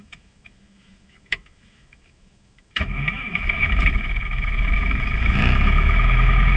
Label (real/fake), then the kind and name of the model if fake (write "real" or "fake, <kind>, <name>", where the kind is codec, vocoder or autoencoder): fake, autoencoder, DAC-VAE